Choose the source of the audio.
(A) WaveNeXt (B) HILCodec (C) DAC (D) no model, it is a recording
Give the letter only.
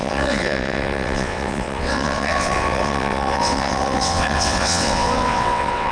A